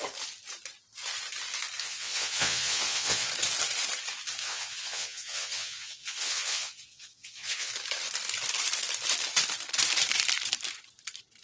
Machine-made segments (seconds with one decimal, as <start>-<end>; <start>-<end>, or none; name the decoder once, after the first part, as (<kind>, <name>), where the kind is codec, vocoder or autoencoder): 1.8-3.3 (vocoder, Vocos); 4.4-7.7